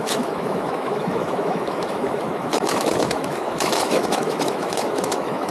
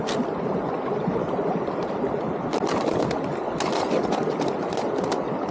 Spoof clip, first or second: first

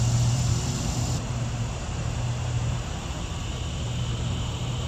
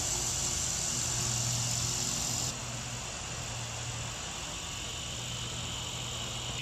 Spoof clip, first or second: first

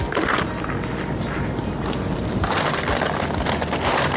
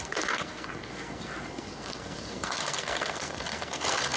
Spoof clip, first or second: second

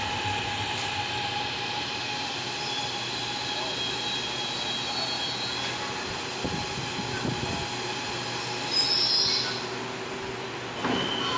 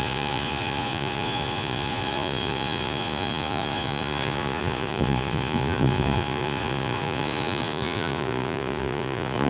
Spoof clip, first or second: second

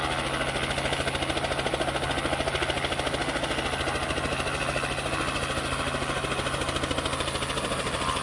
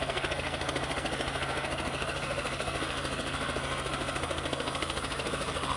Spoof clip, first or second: second